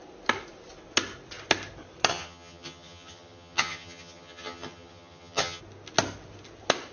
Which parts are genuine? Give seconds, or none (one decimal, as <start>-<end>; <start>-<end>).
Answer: 0.0-2.1; 5.6-6.9

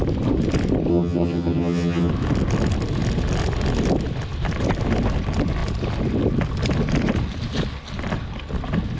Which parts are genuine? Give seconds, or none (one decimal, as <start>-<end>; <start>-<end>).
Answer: 0.0-0.9; 2.1-9.0

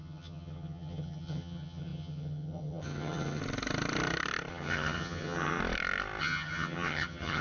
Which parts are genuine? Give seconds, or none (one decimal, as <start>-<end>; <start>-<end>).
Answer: 3.4-4.5; 5.6-6.2

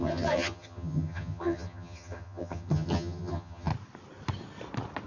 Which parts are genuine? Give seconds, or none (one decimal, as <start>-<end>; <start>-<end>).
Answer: 3.7-5.1